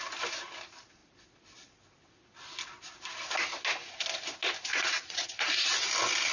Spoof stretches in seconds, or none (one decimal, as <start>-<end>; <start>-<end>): 4.7-5.5